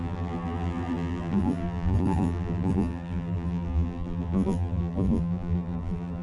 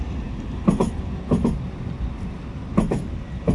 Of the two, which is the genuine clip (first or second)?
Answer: second